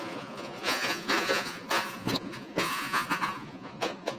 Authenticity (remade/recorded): remade